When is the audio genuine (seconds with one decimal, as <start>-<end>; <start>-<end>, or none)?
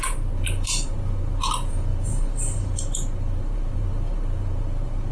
none